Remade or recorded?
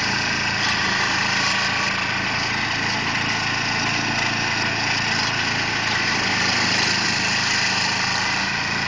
recorded